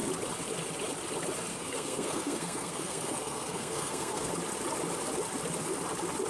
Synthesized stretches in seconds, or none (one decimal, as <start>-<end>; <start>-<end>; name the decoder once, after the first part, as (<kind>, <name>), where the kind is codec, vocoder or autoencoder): 1.5-4.3 (codec, SNAC)